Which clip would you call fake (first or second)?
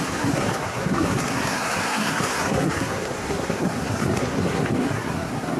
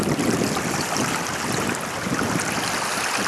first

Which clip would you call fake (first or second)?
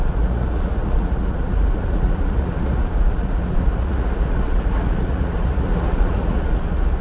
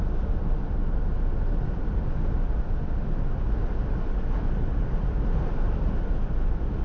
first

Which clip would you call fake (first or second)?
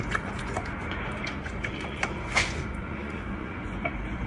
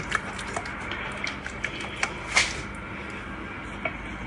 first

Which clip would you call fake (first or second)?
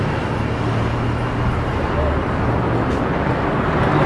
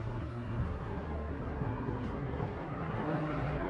second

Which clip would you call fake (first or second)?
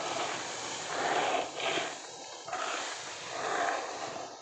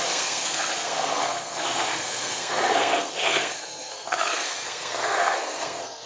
second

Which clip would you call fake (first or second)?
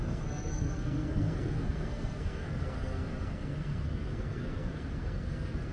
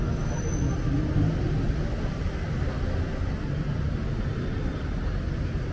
first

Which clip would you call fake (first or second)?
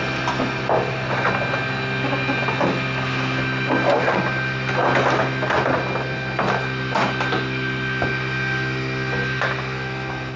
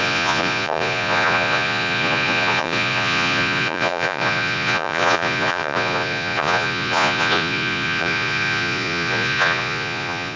second